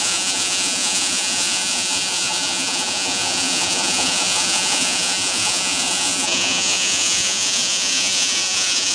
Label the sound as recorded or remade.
remade